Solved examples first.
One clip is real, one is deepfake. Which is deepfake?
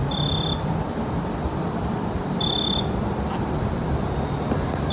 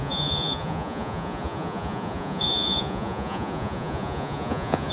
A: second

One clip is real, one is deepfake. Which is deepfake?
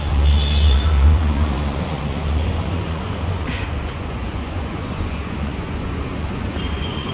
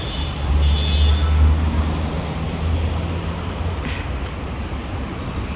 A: first